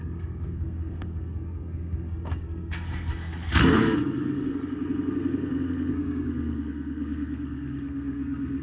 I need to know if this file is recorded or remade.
remade